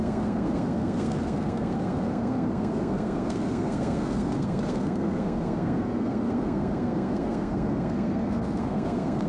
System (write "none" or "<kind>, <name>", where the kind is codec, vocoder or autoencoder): codec, SNAC